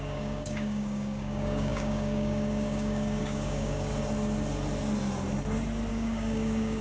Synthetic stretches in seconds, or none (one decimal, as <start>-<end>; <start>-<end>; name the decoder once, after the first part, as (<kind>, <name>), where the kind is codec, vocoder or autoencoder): 0.0-3.9 (codec, DAC); 5.9-6.8